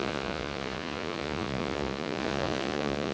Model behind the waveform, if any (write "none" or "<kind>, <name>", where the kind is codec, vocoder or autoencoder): vocoder, Vocos